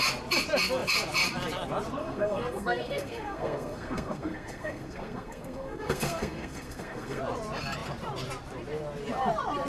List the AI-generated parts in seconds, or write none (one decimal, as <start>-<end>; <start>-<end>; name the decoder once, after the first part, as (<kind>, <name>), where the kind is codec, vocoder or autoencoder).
2.0-7.2 (codec, SNAC)